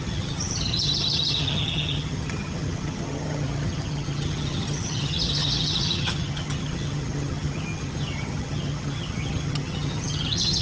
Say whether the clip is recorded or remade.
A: remade